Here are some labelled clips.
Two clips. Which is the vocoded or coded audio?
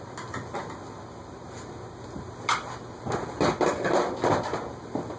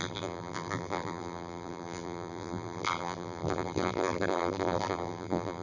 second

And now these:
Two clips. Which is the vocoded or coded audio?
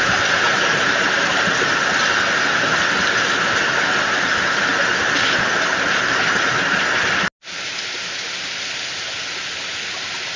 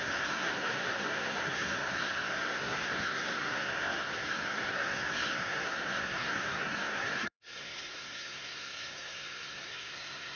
second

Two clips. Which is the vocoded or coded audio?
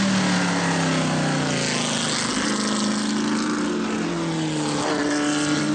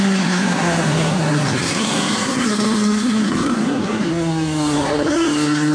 second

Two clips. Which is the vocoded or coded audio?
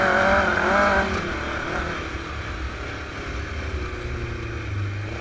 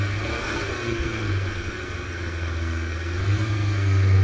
second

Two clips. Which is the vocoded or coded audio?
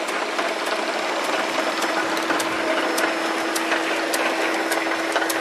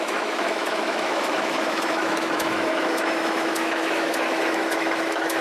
second